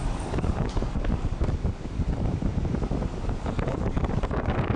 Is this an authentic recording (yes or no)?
no